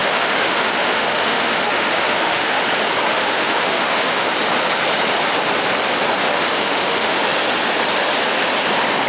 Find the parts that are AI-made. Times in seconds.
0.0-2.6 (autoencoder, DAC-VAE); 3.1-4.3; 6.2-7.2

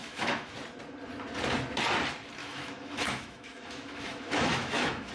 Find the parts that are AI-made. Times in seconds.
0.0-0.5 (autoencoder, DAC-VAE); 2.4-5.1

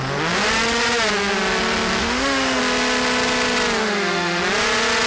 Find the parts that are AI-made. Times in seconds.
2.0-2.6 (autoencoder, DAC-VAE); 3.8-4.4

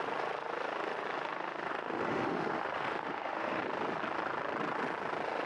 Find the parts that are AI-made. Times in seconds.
1.7-3.6 (autoencoder, DAC-VAE)